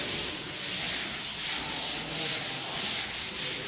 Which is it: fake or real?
real